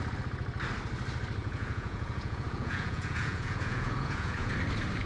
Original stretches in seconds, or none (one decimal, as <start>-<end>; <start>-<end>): 0.0-1.4; 4.5-5.1